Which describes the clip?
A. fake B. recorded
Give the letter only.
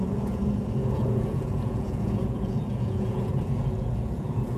A